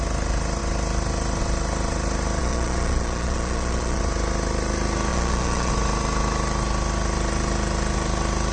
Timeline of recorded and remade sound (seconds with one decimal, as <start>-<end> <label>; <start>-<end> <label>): 0.0-2.4 recorded; 2.4-4.0 remade; 4.0-5.1 recorded; 5.1-5.7 remade; 5.7-8.5 recorded